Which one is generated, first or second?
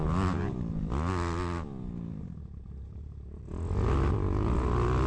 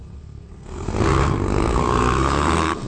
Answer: second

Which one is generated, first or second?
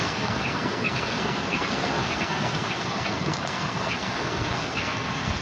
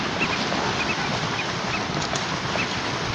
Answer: first